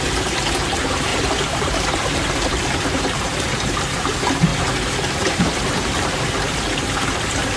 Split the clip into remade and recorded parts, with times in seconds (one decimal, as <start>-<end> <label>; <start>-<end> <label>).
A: 0.0-4.5 remade; 4.5-5.1 recorded; 5.1-7.6 remade

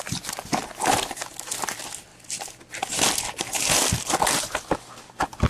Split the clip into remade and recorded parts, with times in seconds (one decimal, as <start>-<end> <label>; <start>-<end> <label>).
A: 0.0-2.1 recorded; 2.1-5.5 remade

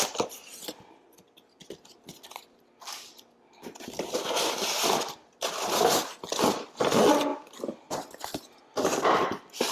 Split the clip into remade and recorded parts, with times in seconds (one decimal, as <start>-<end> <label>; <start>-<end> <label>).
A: 0.0-9.7 recorded

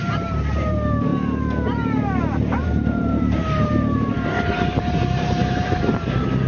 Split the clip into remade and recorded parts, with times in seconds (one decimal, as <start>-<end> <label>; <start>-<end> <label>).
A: 0.0-1.1 remade; 1.1-2.5 recorded; 2.5-6.5 remade

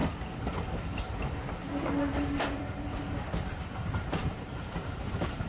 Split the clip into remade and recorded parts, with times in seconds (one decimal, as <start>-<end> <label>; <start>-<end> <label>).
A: 0.0-2.1 recorded; 2.1-5.5 remade